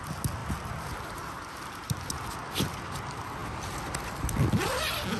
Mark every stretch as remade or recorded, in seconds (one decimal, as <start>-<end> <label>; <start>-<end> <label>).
0.0-5.2 recorded